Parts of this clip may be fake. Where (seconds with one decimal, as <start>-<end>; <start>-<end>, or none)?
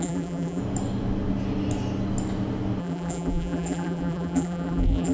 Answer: 0.0-0.6; 2.8-5.1